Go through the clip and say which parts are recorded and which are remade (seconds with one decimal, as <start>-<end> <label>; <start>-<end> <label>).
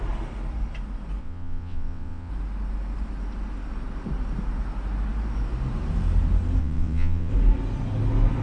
0.0-1.2 recorded; 1.2-2.3 remade; 2.3-6.6 recorded; 6.6-7.3 remade; 7.3-8.4 recorded